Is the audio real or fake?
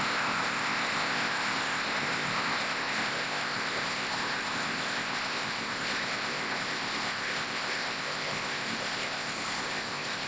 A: fake